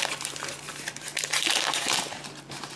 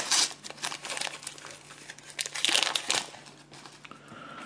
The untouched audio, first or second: second